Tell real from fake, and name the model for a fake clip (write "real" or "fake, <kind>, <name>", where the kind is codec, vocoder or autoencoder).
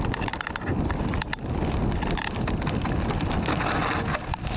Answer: real